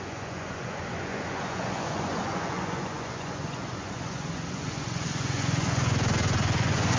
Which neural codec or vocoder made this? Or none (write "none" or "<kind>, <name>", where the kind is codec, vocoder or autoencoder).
vocoder, Vocos